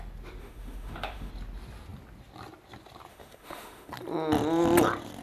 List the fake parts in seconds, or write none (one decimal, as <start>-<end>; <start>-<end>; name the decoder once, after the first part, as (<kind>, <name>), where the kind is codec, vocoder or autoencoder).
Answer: 0.4-1.3 (autoencoder, DAC-VAE); 3.1-3.9